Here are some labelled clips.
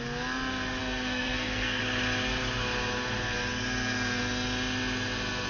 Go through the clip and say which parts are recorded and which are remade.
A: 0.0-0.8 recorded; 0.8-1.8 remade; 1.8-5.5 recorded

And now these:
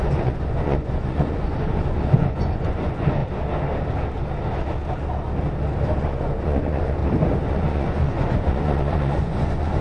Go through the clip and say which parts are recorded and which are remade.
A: 0.0-3.2 remade; 3.2-6.0 recorded; 6.0-7.0 remade; 7.0-7.5 recorded; 7.5-9.8 remade

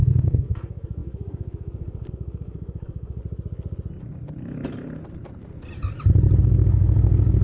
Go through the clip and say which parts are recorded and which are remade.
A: 0.0-3.2 remade; 3.2-6.4 recorded; 6.4-7.4 remade

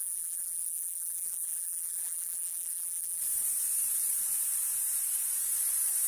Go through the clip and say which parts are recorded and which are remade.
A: 0.0-3.2 remade; 3.2-6.1 recorded

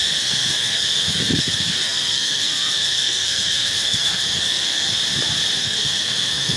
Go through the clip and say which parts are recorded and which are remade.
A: 0.0-5.0 remade; 5.0-5.6 recorded; 5.6-6.6 remade

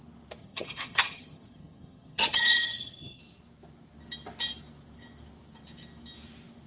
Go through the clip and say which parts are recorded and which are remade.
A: 0.0-0.4 recorded; 0.4-3.2 remade; 3.2-6.7 recorded

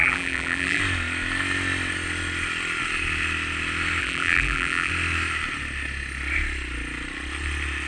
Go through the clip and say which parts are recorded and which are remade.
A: 0.0-0.8 remade; 0.8-4.0 recorded; 4.0-4.9 remade; 4.9-7.9 recorded